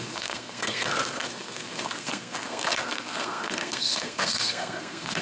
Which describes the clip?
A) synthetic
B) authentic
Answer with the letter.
A